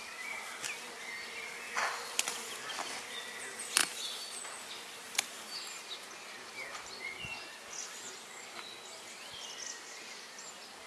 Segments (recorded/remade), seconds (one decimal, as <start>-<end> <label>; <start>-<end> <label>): 0.0-10.9 recorded